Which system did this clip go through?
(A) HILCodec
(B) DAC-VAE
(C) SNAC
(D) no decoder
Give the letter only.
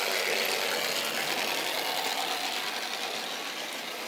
D